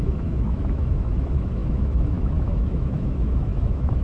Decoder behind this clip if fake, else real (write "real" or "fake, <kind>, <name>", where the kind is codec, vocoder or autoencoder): fake, autoencoder, DAC-VAE